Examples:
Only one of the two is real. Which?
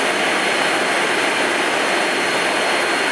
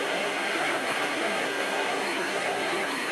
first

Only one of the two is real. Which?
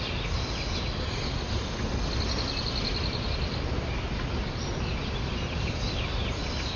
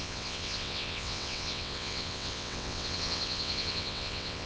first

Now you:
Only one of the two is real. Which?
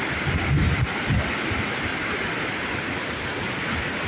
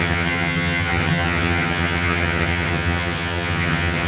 first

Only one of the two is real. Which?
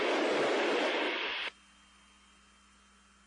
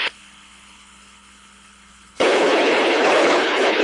first